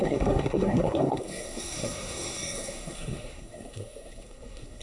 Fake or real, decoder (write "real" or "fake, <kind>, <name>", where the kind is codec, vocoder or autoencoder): fake, codec, SNAC